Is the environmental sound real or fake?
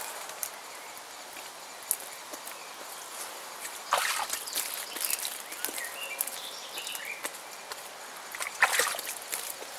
real